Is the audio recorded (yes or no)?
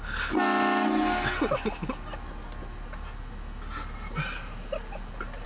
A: yes